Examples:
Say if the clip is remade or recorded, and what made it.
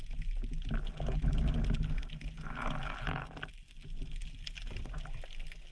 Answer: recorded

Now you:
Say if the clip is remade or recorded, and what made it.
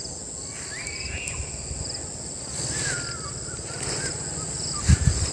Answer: recorded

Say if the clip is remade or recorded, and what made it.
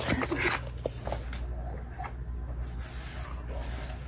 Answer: recorded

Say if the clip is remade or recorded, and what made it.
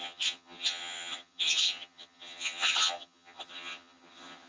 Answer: remade, vocoder, HiFi-GAN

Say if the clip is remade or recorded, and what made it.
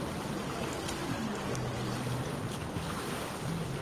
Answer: recorded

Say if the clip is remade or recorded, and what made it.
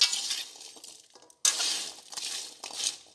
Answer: recorded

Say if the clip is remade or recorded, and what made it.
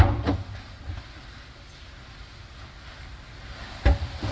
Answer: recorded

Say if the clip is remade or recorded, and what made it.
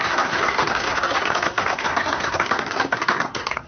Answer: remade, codec, SNAC